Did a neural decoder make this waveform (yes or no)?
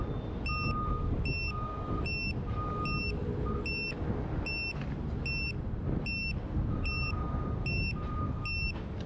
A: no